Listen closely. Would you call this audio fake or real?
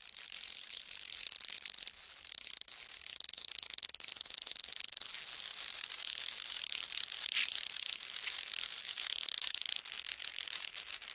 real